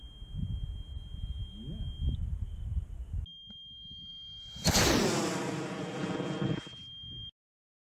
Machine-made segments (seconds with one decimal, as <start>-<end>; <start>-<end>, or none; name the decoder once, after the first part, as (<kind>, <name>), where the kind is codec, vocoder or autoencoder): none